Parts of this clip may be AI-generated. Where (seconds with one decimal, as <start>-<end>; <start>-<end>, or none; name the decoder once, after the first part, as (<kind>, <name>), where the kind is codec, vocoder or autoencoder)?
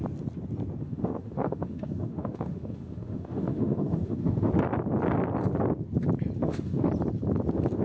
0.8-4.5 (autoencoder, DAC-VAE); 6.4-6.9